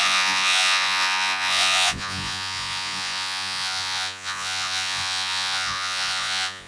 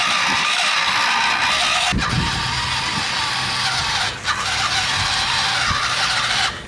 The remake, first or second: first